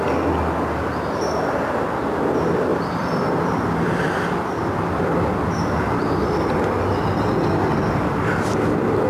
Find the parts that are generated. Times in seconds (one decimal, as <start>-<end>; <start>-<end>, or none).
2.7-5.0